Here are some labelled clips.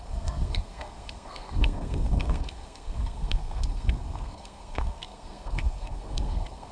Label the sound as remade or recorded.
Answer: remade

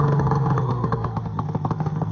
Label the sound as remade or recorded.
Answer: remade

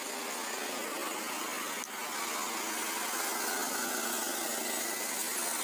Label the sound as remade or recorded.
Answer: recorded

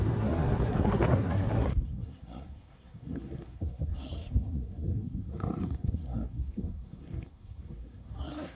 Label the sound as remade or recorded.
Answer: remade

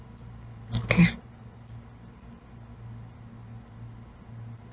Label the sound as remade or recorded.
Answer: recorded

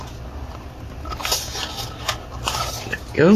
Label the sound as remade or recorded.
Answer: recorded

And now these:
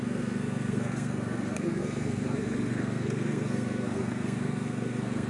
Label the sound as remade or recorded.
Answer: remade